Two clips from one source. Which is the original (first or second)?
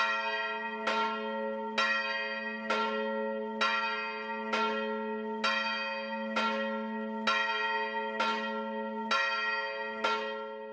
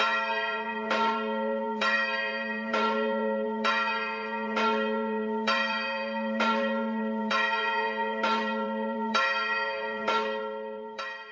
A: first